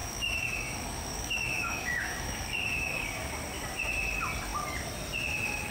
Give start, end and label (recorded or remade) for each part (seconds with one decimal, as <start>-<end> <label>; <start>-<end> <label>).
0.0-3.3 remade; 3.3-5.7 recorded